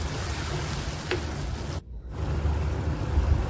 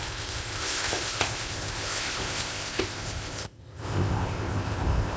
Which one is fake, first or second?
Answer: second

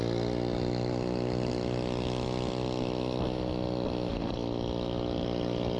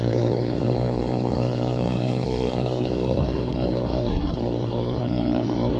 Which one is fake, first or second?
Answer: second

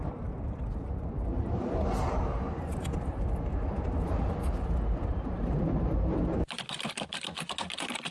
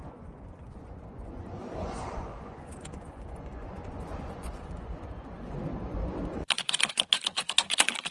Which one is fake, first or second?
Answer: second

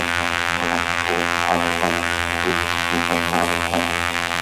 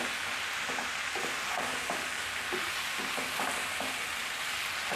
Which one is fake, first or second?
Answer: first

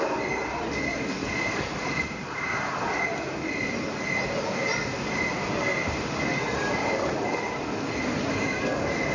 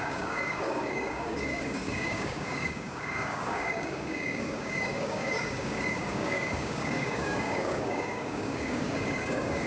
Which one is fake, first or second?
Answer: second